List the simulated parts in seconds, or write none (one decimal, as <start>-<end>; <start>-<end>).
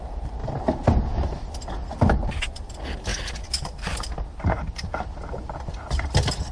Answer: none